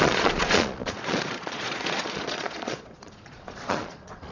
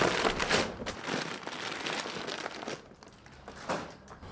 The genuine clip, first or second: second